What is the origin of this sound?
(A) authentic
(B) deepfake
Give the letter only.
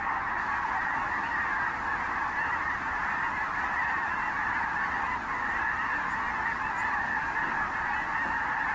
A